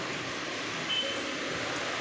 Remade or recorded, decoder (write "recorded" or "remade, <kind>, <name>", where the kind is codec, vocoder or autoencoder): recorded